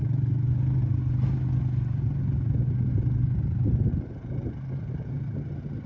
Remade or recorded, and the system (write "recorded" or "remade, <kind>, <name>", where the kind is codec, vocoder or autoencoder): recorded